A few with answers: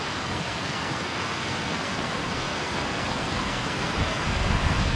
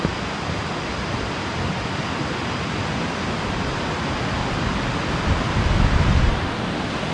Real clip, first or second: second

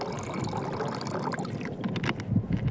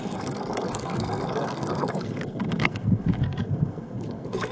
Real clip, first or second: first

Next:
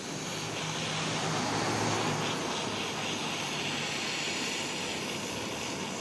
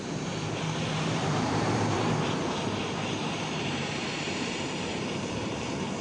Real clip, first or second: first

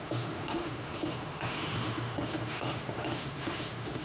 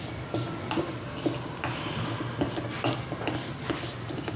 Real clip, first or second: second